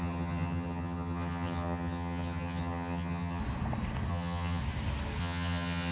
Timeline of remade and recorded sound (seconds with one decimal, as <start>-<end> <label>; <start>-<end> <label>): 0.0-3.4 remade; 3.4-4.1 recorded; 4.1-4.6 remade; 4.6-5.2 recorded; 5.2-5.9 remade